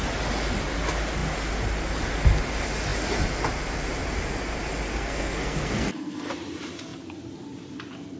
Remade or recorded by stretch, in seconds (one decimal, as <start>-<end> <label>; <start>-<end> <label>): 0.0-4.9 recorded; 4.9-6.3 remade; 6.3-8.2 recorded